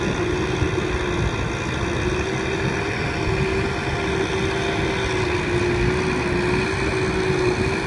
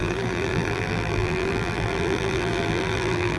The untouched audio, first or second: first